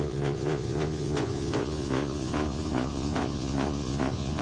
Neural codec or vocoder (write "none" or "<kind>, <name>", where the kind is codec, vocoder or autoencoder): vocoder, Vocos